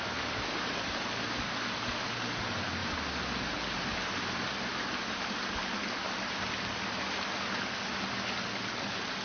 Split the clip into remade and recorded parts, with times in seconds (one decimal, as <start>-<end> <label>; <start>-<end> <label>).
0.0-9.2 recorded